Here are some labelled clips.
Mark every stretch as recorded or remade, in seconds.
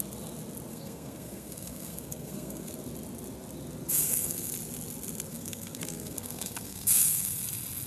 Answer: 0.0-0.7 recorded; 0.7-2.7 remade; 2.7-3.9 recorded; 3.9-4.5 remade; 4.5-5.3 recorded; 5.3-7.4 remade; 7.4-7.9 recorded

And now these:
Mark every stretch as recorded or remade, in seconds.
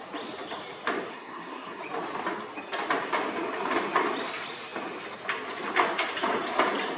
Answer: 0.0-1.1 recorded; 1.1-1.8 remade; 1.8-7.0 recorded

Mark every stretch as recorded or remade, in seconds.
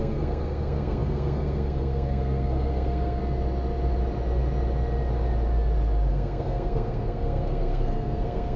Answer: 0.0-3.2 remade; 3.2-6.1 recorded; 6.1-8.6 remade